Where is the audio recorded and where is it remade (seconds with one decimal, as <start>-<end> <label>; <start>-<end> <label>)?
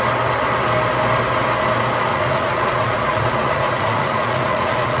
0.0-2.1 recorded; 2.1-5.0 remade